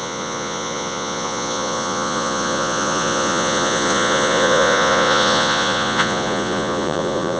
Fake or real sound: fake